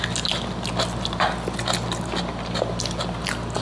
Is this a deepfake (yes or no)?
no